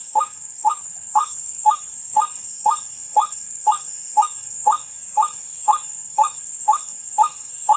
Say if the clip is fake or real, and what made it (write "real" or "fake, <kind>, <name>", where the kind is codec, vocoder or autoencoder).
fake, codec, SNAC